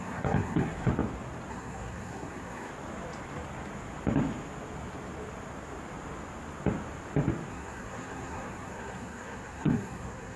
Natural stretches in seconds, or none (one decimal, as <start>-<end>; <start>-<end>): 0.9-1.5; 2.7-7.5